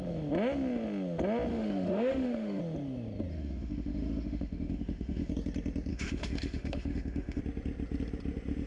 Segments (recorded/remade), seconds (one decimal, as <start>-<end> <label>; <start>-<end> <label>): 0.0-1.5 recorded; 1.5-2.6 remade; 2.6-3.3 recorded; 3.3-5.3 remade; 5.3-5.9 recorded; 5.9-7.4 remade; 7.4-8.7 recorded